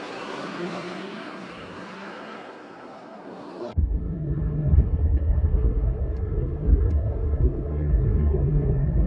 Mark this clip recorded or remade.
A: remade